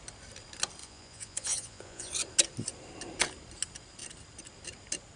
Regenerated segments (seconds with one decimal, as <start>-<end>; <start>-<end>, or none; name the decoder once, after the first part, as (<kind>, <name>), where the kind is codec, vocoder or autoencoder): 0.8-2.1 (vocoder, Vocos)